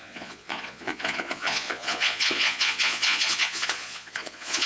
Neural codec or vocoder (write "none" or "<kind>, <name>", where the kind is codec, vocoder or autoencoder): vocoder, Vocos